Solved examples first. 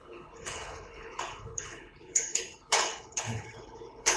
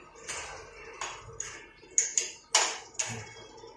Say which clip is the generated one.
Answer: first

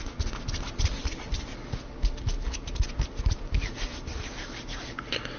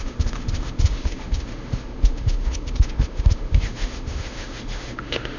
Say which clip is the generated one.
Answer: second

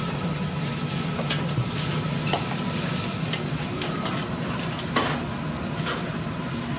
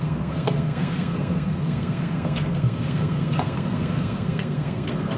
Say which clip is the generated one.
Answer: second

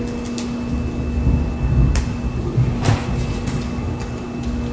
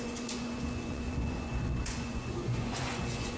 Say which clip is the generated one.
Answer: second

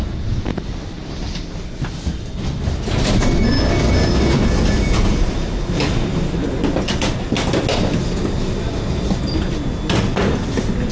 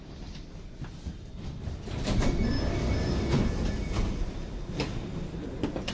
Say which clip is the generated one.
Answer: second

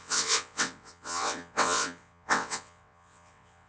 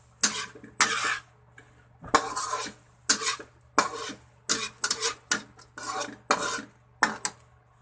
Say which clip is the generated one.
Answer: first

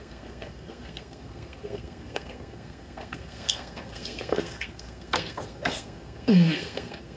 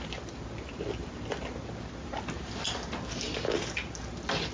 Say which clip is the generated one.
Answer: first